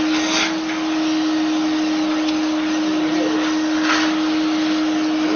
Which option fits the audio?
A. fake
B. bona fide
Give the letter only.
B